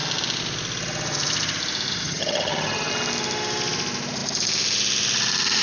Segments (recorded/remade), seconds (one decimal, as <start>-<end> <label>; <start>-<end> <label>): 0.0-1.9 recorded; 1.9-2.9 remade; 2.9-5.6 recorded